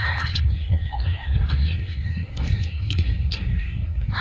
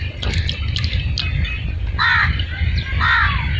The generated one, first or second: first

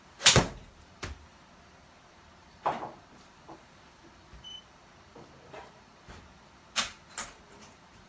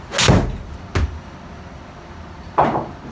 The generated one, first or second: first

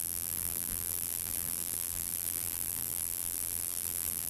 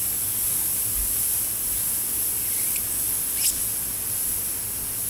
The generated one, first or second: first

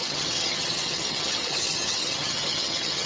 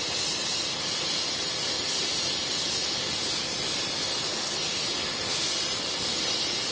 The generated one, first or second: first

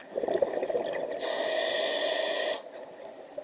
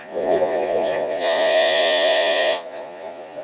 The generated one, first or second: second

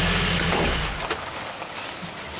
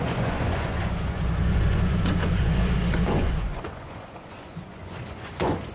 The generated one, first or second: second